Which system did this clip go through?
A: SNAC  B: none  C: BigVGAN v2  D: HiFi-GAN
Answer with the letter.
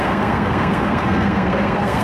A